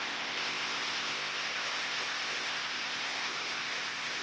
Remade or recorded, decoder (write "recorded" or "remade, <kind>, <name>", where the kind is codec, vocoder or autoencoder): remade, codec, ZipCodec